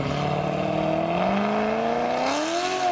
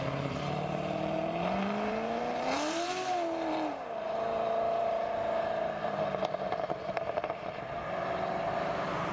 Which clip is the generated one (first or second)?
second